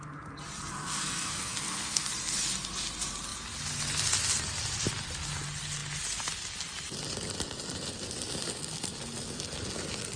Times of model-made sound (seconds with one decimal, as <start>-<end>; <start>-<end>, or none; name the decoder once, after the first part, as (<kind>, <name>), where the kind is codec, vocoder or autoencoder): 0.7-2.1 (codec, SNAC)